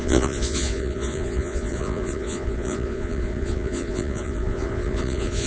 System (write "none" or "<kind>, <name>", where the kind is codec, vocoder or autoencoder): vocoder, Vocos